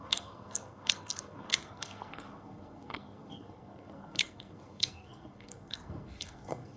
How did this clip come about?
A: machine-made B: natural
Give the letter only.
A